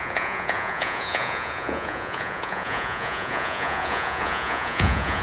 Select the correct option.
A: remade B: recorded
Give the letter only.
A